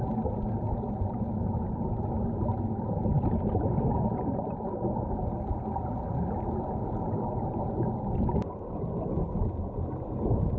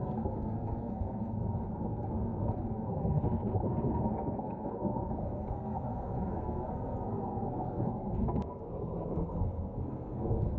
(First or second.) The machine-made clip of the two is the second